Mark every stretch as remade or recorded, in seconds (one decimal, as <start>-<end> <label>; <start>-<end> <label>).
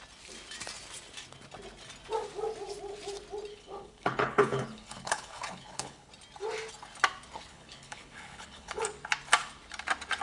0.0-3.5 recorded; 3.5-6.1 remade; 6.1-7.5 recorded; 7.5-8.8 remade; 8.8-10.2 recorded